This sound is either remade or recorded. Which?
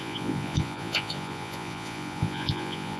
remade